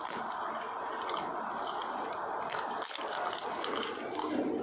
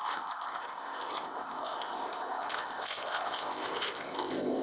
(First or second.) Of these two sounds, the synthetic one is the second